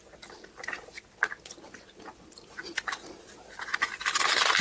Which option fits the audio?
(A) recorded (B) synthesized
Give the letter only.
A